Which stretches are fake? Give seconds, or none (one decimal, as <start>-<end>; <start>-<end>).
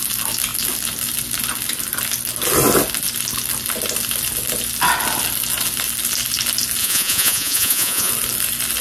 6.8-8.1